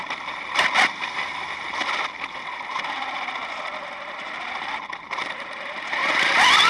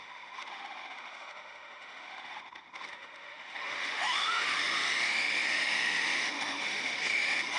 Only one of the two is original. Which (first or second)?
first